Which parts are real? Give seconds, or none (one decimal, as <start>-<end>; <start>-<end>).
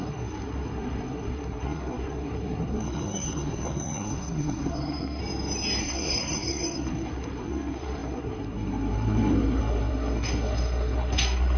5.2-5.8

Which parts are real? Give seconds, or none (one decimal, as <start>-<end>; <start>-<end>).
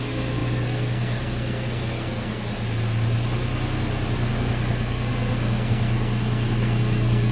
2.5-4.3